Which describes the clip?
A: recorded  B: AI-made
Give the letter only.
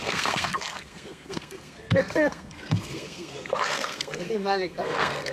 B